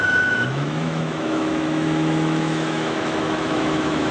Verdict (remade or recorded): remade